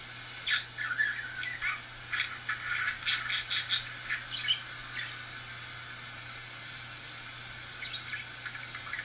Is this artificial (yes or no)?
no